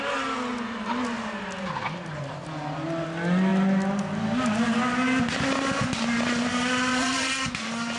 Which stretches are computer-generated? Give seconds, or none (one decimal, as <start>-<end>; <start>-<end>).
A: 6.9-8.0